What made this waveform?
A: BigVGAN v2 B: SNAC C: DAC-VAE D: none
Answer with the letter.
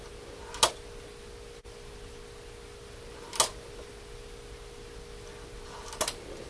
D